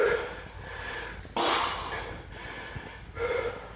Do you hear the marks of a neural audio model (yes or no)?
no